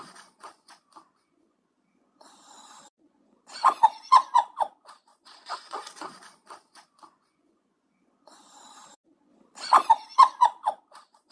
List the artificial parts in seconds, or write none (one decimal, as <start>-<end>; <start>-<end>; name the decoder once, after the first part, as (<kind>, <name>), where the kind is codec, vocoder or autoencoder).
0.0-9.3 (vocoder, Vocos); 9.9-11.3